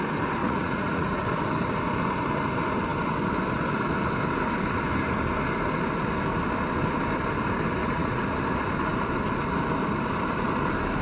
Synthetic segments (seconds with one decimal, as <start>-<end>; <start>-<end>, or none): 0.4-1.2; 7.8-8.4